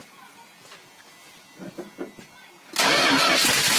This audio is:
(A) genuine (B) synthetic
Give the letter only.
A